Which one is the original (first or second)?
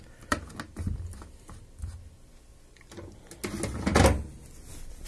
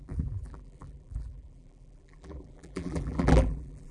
first